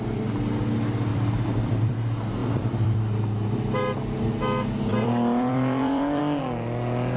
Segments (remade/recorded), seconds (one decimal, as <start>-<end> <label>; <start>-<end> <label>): 0.0-1.1 recorded; 1.1-1.9 remade; 1.9-2.4 recorded; 2.4-3.0 remade; 3.0-4.9 recorded; 4.9-6.2 remade; 6.2-7.2 recorded

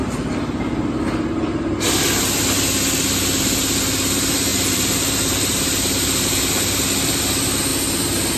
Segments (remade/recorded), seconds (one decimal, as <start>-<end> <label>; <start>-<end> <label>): 0.0-4.5 recorded; 4.5-7.2 remade; 7.2-7.7 recorded; 7.7-8.4 remade

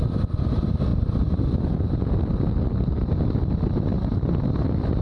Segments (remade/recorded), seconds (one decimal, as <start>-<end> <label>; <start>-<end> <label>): 0.0-5.0 recorded

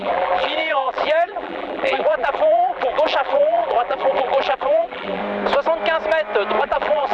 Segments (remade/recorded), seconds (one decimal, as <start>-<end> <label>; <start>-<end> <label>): 0.0-5.2 remade; 5.2-6.6 recorded; 6.6-7.1 remade

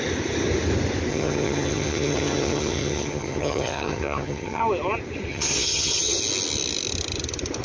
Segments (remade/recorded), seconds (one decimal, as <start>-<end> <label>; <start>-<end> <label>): 0.0-1.1 recorded; 1.1-4.6 remade; 4.6-5.3 recorded; 5.3-6.2 remade; 6.2-7.6 recorded

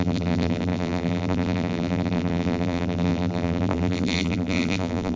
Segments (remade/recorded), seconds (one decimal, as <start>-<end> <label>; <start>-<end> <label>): 0.0-5.2 remade